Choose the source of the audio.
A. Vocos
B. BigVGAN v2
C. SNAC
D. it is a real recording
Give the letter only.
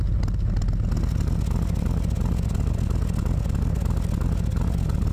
D